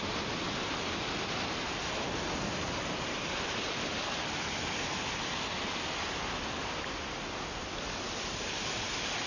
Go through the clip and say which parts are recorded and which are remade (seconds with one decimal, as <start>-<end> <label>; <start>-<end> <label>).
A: 0.0-9.3 recorded